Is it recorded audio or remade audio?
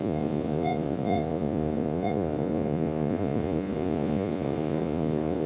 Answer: remade